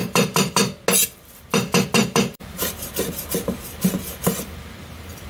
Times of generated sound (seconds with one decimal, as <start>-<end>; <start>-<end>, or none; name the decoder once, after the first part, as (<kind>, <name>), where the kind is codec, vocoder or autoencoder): 0.0-0.7 (vocoder, BigVGAN v2); 2.0-5.3